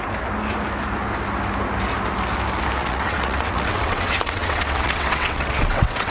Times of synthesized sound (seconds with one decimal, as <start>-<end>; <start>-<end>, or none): 2.8-6.1

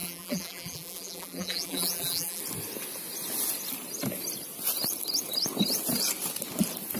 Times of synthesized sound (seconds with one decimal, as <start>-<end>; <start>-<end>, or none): 0.0-2.4

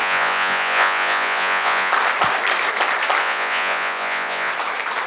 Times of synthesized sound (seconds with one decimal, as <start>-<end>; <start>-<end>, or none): 0.0-1.9; 3.2-4.5

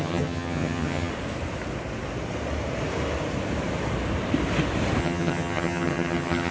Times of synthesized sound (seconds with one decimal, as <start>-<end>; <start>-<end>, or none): 0.0-1.1; 5.0-6.5

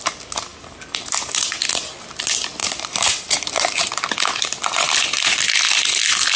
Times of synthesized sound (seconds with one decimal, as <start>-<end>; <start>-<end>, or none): 2.6-3.9

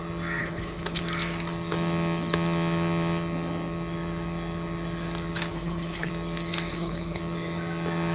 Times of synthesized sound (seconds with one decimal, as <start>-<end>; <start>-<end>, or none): 0.4-1.0; 5.5-6.1; 6.7-7.2

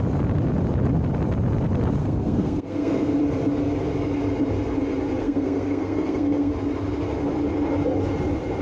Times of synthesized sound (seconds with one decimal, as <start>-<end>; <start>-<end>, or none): 2.0-3.2; 5.2-6.5